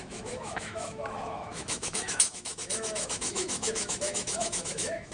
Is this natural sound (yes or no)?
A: no